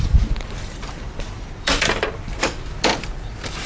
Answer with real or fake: fake